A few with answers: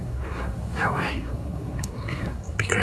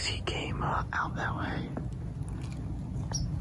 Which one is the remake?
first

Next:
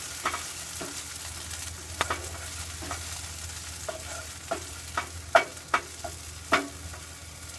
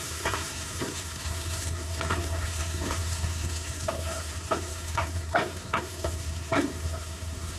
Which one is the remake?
second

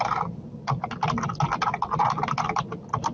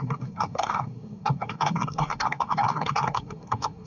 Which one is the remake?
second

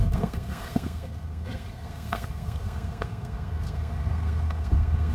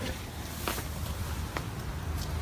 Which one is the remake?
first